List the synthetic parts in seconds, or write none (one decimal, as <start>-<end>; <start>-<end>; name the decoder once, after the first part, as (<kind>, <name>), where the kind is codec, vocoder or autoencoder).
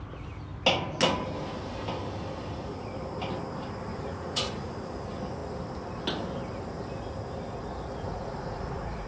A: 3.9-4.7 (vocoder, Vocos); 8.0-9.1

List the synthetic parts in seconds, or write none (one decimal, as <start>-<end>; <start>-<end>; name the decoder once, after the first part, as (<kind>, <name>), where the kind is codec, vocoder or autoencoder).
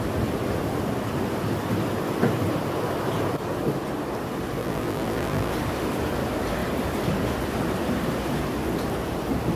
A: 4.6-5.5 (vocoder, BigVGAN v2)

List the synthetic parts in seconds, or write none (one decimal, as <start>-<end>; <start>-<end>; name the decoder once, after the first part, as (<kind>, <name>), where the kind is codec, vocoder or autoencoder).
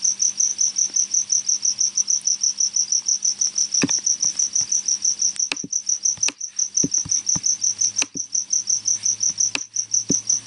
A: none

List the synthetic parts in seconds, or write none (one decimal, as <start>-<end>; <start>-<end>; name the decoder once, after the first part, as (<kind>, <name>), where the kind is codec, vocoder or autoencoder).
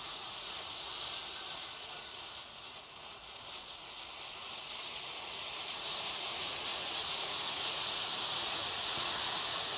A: 0.0-0.9 (vocoder, Vocos); 1.6-9.8